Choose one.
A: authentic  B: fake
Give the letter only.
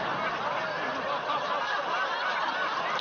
A